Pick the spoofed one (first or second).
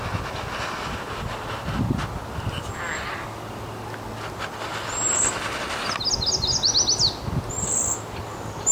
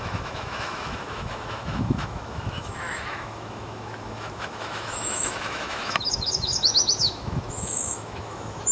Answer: second